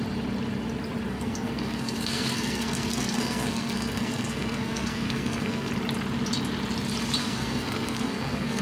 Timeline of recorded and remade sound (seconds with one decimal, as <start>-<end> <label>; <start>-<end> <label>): 0.0-1.1 recorded; 1.1-5.7 remade; 5.7-7.2 recorded; 7.2-8.6 remade